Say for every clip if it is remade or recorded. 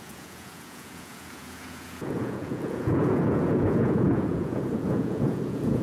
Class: remade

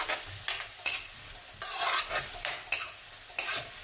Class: remade